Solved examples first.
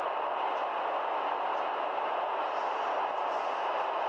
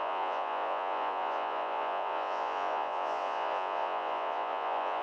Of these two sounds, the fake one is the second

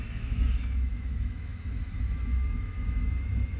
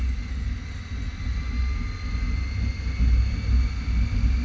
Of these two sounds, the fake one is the first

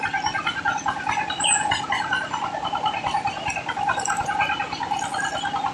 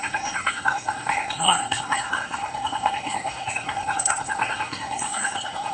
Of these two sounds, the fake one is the second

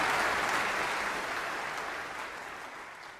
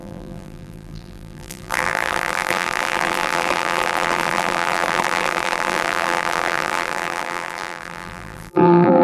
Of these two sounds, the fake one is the second